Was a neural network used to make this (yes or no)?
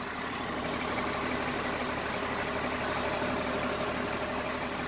no